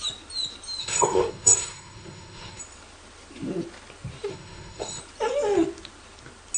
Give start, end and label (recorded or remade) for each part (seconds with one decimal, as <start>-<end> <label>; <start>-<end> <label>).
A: 0.0-0.8 recorded; 0.8-2.6 remade; 2.6-4.3 recorded; 4.3-5.0 remade; 5.0-6.6 recorded

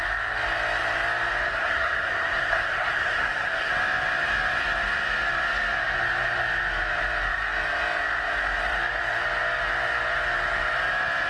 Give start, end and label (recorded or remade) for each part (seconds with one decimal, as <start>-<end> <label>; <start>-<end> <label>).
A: 0.0-1.5 recorded; 1.5-3.7 remade; 3.7-11.3 recorded

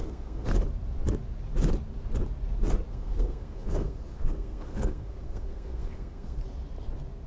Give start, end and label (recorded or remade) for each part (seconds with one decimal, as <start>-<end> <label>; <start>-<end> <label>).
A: 0.0-0.5 remade; 0.5-2.9 recorded; 2.9-6.4 remade; 6.4-7.3 recorded

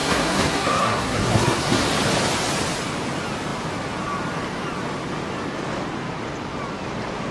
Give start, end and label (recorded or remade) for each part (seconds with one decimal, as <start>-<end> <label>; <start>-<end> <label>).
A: 0.0-1.8 remade; 1.8-7.3 recorded

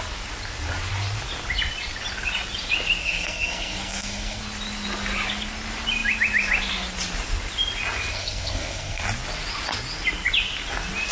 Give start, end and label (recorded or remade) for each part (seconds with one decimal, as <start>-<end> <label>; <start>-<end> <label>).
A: 0.0-3.0 recorded; 3.0-4.4 remade; 4.4-8.1 recorded; 8.1-9.0 remade; 9.0-11.1 recorded

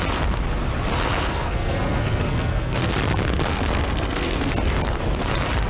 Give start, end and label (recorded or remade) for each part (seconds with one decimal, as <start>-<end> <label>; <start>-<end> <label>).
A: 0.0-1.3 recorded; 1.3-2.9 remade; 2.9-3.5 recorded; 3.5-4.4 remade; 4.4-5.7 recorded

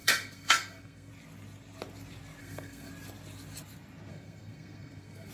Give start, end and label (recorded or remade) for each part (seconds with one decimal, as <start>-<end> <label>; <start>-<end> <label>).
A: 0.0-1.1 remade; 1.1-2.4 recorded; 2.4-2.9 remade; 2.9-4.1 recorded; 4.1-5.3 remade